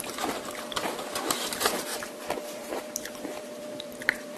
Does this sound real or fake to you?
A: fake